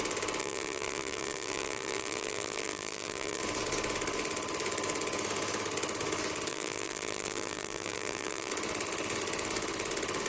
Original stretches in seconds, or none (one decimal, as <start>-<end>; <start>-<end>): 0.0-0.4; 3.4-6.5; 8.5-10.3

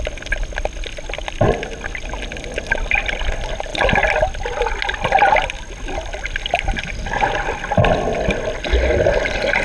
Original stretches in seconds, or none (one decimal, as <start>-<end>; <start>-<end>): 0.0-9.6

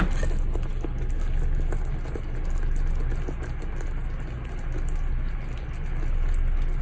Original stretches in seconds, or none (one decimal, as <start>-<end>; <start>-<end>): 0.0-6.8

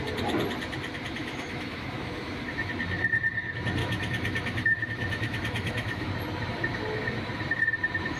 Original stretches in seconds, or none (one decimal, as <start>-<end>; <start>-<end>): 0.0-1.2; 2.7-3.8; 6.1-8.2

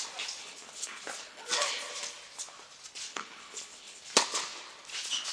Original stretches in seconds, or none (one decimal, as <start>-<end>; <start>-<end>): 0.0-0.4; 1.5-3.1; 4.0-5.3

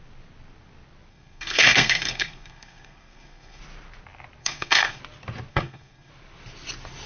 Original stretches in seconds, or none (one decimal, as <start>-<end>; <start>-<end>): 0.0-1.1; 3.6-4.4; 5.0-5.5; 6.1-7.1

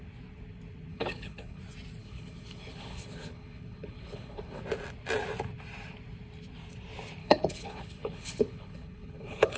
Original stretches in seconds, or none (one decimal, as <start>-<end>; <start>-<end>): 0.0-0.9; 1.6-2.0; 4.6-7.2

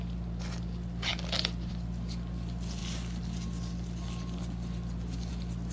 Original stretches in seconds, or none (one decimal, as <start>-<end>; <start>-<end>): 0.0-5.7